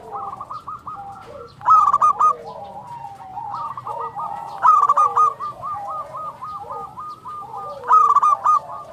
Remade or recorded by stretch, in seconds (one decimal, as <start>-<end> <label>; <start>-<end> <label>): 0.0-3.3 recorded; 3.3-4.7 remade; 4.7-8.9 recorded

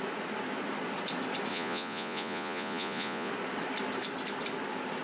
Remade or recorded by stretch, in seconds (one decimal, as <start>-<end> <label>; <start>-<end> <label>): 0.0-1.5 recorded; 1.5-3.3 remade; 3.3-5.0 recorded

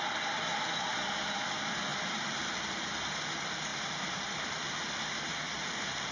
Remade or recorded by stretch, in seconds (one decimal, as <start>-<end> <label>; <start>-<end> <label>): 0.0-1.9 recorded; 1.9-2.7 remade; 2.7-3.7 recorded; 3.7-4.4 remade; 4.4-6.1 recorded

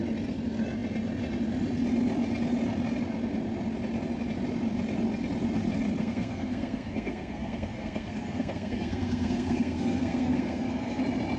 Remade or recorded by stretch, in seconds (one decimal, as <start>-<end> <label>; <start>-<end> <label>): 0.0-6.0 recorded; 6.0-11.0 remade; 11.0-11.4 recorded

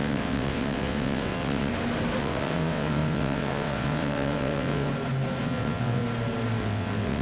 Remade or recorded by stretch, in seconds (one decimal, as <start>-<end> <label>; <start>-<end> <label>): 0.0-1.7 remade; 1.7-2.2 recorded; 2.2-4.9 remade; 4.9-5.4 recorded; 5.4-6.0 remade; 6.0-6.6 recorded; 6.6-7.2 remade

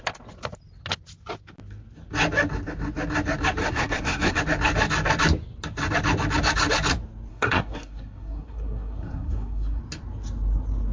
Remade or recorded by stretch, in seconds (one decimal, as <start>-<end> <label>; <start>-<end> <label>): 0.0-3.6 recorded; 3.6-4.4 remade; 4.4-7.3 recorded; 7.3-9.8 remade; 9.8-10.9 recorded

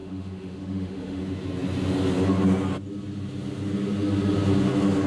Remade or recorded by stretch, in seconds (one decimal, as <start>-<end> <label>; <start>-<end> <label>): 0.0-1.2 remade; 1.2-5.1 recorded

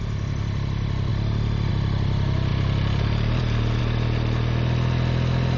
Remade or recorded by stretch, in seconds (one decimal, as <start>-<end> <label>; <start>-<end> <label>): 0.0-5.6 recorded